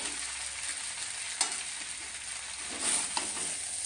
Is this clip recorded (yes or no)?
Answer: yes